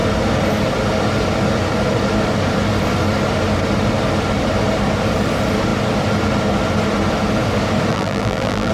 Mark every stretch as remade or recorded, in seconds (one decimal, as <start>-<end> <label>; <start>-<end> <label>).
0.0-7.9 recorded; 7.9-8.7 remade